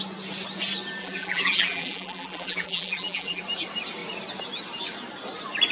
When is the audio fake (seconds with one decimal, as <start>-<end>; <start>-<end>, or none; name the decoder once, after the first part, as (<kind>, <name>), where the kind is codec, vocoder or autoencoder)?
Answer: 1.0-3.4 (vocoder, BigVGAN v2)